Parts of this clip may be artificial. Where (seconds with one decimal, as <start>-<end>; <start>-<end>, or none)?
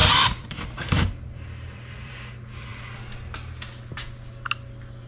0.0-2.1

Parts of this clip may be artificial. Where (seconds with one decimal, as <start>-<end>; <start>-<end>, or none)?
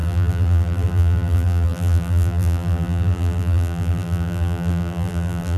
0.0-5.6